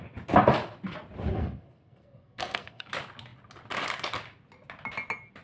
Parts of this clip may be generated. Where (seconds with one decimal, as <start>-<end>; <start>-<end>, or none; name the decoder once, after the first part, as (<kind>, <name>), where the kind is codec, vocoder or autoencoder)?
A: 1.3-2.9 (codec, SNAC)

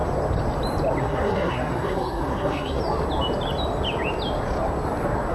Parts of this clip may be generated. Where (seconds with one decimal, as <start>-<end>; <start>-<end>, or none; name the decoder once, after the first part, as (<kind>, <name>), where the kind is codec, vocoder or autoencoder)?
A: 1.0-2.8 (codec, SNAC)

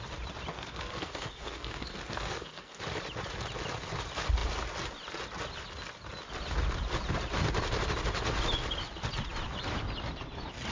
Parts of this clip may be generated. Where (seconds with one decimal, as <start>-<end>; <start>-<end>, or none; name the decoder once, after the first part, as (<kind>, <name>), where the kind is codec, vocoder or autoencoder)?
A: 0.5-2.8 (codec, SNAC)

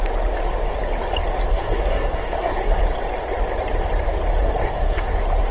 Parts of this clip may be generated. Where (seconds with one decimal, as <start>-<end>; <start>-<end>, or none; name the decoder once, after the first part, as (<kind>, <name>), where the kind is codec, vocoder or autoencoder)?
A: 1.5-2.8 (codec, SNAC); 4.4-5.1

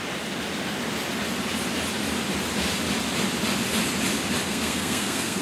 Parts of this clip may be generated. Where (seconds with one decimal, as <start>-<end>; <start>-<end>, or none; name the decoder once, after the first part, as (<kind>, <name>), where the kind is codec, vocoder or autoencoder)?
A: 4.5-5.4 (codec, SNAC)

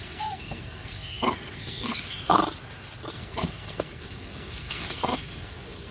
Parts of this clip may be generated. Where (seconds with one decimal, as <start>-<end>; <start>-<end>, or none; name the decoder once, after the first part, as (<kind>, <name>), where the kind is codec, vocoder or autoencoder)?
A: 0.0-2.4 (codec, SNAC); 3.1-5.9

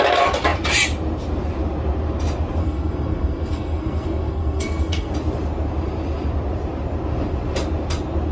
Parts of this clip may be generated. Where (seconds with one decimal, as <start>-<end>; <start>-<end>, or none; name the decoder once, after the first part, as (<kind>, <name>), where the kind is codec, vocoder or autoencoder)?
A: 2.6-5.1 (codec, SNAC)

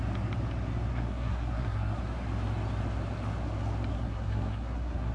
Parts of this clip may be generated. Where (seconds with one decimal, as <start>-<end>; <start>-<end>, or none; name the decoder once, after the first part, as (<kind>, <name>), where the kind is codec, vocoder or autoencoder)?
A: 0.9-2.0 (codec, SNAC); 3.9-5.1